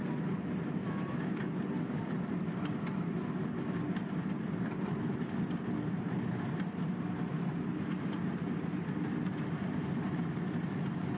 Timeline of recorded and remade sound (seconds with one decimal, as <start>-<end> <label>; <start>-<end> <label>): 0.0-0.8 recorded; 0.8-1.5 remade; 1.5-11.2 recorded